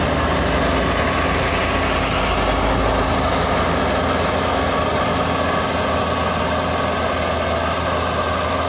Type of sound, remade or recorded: recorded